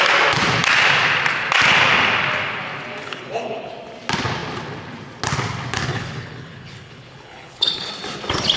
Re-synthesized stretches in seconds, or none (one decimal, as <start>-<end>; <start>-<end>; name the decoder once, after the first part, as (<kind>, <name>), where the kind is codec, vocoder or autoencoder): 3.0-3.7 (codec, HILCodec); 5.9-7.9